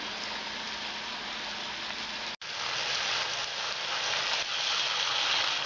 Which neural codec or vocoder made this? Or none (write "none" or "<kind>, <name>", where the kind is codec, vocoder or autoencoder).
none